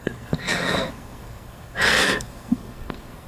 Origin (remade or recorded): remade